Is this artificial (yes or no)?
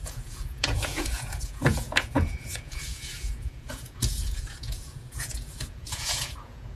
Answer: yes